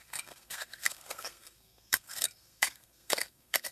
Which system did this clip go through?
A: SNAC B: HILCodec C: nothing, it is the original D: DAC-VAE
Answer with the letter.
A